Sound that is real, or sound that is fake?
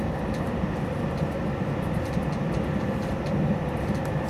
real